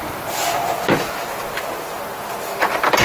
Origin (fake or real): real